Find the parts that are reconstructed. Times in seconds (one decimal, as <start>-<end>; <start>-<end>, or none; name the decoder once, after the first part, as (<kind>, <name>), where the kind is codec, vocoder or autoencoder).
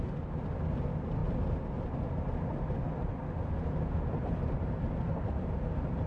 none